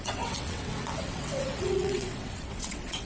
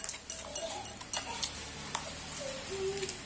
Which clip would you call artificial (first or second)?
first